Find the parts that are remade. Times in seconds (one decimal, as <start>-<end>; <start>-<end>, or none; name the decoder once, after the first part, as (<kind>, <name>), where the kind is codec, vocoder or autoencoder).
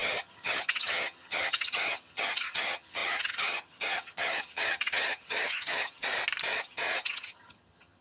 0.0-6.0 (vocoder, HiFi-GAN); 6.6-8.0